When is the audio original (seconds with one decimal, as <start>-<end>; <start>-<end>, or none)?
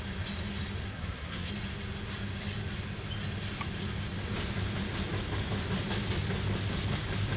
0.0-0.9; 1.5-7.4